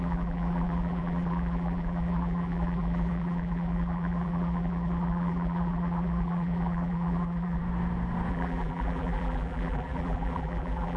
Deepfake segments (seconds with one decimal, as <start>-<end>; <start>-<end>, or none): 0.0-7.6; 8.3-11.0